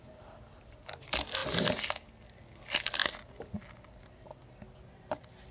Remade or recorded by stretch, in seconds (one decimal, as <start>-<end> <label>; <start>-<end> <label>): 0.0-5.5 recorded